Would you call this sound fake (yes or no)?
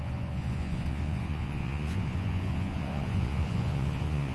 yes